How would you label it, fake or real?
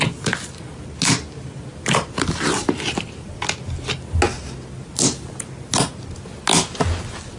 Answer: real